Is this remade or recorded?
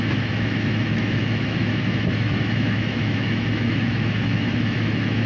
remade